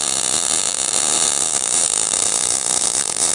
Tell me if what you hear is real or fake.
fake